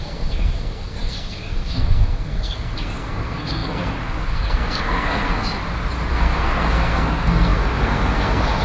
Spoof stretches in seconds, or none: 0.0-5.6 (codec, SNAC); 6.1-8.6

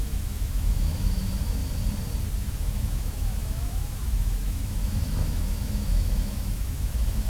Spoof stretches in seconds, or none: 0.0-1.6 (autoencoder, DAC-VAE); 2.4-7.3

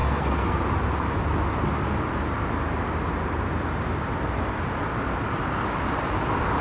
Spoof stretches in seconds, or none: 0.0-0.6 (codec, SNAC)

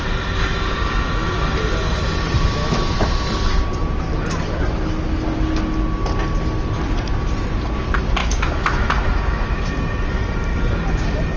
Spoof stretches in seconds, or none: 2.6-3.1 (autoencoder, DAC-VAE); 8.2-9.6

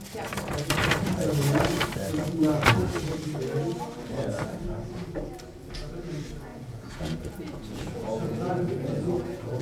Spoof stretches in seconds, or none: 6.5-9.6 (vocoder, Vocos)

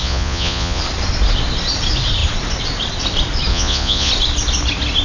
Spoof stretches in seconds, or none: 0.0-0.8 (vocoder, Vocos); 3.5-4.1